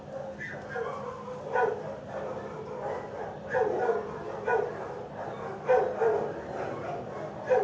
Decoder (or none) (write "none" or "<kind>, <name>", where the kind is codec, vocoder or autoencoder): none